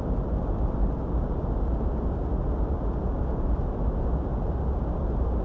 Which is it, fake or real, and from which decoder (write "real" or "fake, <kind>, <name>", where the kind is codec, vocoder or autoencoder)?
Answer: real